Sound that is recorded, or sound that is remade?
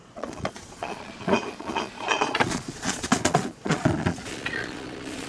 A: remade